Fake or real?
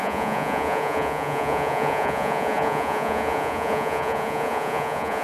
fake